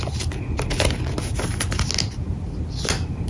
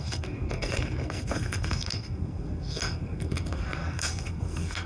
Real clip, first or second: first